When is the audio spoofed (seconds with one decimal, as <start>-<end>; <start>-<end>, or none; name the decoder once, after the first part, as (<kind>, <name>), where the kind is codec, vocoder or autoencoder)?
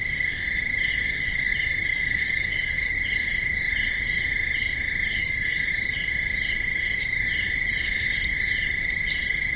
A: 0.9-1.5 (codec, DAC); 1.9-2.9; 5.1-5.7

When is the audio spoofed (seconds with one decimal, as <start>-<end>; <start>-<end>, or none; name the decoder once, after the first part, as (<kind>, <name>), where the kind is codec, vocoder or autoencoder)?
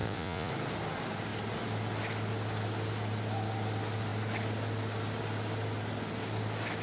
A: 0.0-0.5 (vocoder, Vocos)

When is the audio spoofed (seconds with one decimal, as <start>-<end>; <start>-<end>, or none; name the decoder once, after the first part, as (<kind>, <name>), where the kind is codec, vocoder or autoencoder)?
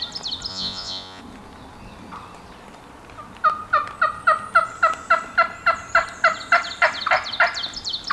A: 0.5-1.2 (vocoder, Vocos)